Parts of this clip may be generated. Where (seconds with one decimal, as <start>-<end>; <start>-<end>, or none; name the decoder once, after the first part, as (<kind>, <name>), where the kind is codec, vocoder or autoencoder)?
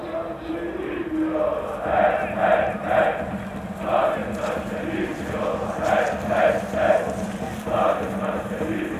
none